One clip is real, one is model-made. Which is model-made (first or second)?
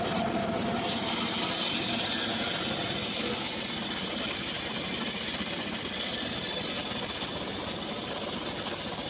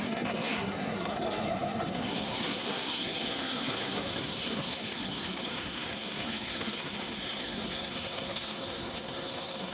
second